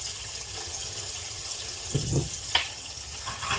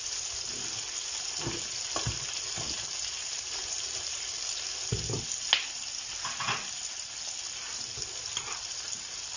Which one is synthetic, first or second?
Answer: first